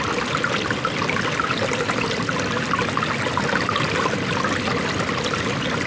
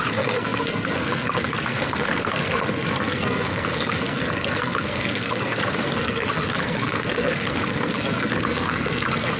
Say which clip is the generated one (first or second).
second